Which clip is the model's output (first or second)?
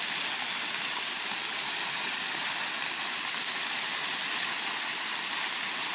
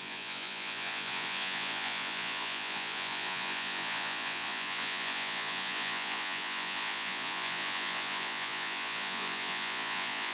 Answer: second